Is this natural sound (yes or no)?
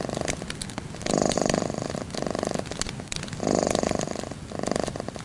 yes